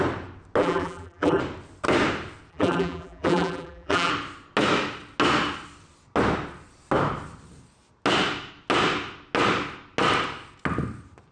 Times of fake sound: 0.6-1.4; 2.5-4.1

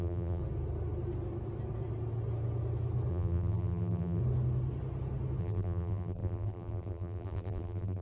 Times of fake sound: 0.0-0.4; 3.1-4.2; 5.4-8.0

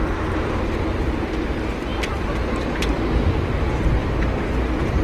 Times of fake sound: 0.0-4.0

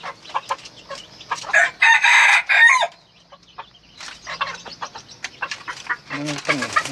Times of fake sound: 1.0-2.9

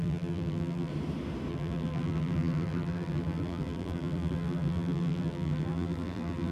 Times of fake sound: 0.0-0.9; 1.5-6.5